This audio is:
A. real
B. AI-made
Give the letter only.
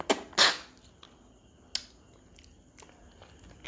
A